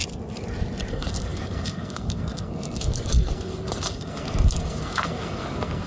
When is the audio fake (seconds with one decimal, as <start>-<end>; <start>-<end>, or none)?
0.9-5.9